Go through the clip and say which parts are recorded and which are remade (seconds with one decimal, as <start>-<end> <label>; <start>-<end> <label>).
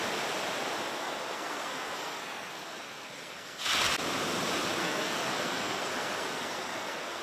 0.0-1.0 recorded; 1.0-3.6 remade; 3.6-4.8 recorded; 4.8-7.2 remade